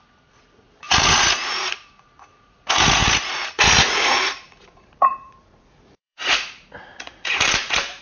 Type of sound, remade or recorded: remade